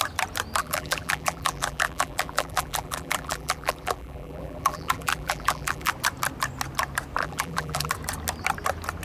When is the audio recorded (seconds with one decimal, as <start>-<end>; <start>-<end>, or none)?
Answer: 0.0-0.6; 5.9-7.2; 7.9-9.0